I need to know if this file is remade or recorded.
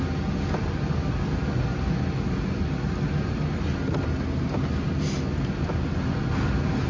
recorded